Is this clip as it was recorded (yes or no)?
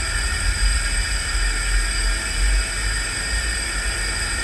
yes